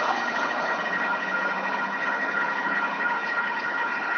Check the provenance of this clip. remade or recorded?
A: remade